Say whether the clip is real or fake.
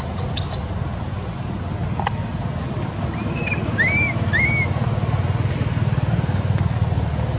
real